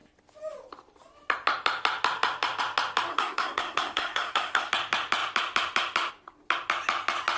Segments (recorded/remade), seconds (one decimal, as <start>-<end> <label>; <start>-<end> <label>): 0.0-3.1 recorded; 3.1-4.7 remade; 4.7-7.4 recorded